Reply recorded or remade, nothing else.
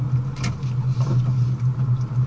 recorded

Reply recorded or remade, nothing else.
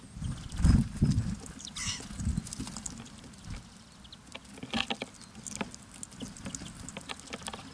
recorded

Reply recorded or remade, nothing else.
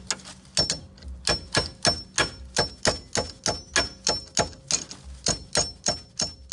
recorded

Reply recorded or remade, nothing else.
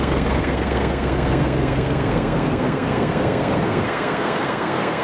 remade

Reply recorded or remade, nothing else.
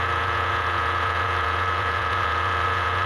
remade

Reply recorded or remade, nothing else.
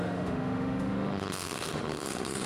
remade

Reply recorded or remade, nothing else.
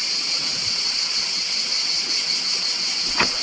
remade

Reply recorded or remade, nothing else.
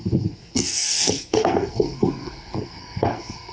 remade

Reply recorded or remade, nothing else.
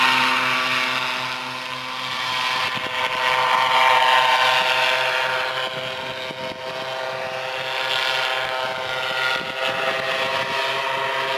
recorded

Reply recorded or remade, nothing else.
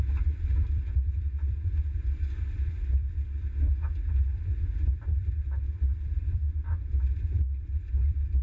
remade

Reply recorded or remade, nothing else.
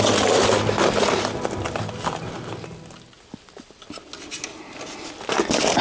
recorded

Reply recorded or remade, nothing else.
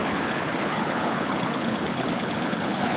remade